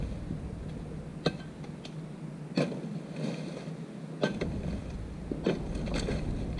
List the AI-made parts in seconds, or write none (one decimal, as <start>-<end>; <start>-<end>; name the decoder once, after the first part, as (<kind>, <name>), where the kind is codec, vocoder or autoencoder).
none